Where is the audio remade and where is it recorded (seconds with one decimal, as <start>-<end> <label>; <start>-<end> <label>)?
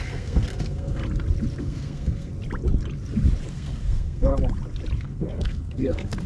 0.0-1.0 remade; 1.0-1.6 recorded; 1.6-2.3 remade; 2.3-3.5 recorded; 3.5-4.3 remade; 4.3-5.0 recorded; 5.0-6.3 remade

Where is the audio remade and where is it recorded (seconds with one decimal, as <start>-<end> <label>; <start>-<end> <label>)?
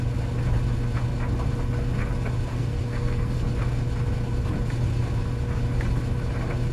0.0-2.5 recorded; 2.5-3.5 remade; 3.5-6.7 recorded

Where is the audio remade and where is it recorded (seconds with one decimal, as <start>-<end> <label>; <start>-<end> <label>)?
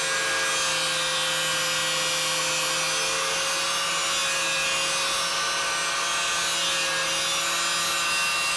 0.0-8.6 recorded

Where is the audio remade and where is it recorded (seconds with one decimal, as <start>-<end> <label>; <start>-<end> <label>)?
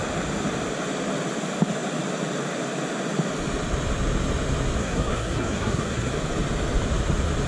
0.0-4.8 recorded; 4.8-6.1 remade; 6.1-7.5 recorded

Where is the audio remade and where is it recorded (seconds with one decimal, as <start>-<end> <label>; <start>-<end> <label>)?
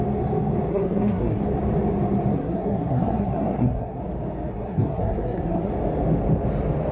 0.0-0.7 recorded; 0.7-1.4 remade; 1.4-2.3 recorded; 2.3-4.0 remade; 4.0-4.5 recorded; 4.5-5.7 remade; 5.7-6.9 recorded